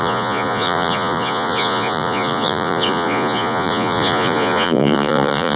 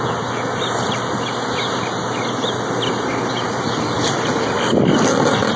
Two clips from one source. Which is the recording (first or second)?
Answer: second